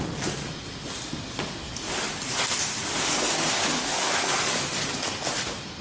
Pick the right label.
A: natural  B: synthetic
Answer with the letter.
A